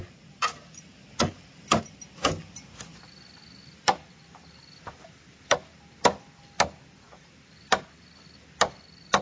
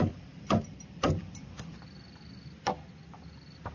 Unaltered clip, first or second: first